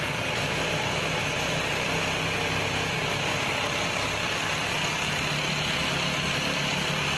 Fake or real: real